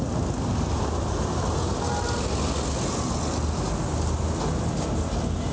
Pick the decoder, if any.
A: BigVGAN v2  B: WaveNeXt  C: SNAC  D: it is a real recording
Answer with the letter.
D